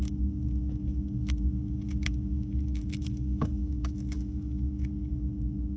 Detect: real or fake fake